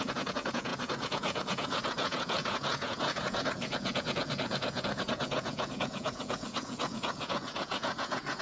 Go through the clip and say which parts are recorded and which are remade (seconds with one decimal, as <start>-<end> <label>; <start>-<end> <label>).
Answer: 0.0-8.4 remade